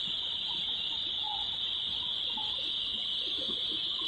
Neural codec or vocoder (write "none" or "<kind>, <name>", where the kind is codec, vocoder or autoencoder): none